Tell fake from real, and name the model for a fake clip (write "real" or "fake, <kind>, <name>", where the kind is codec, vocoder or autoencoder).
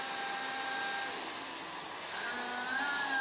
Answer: real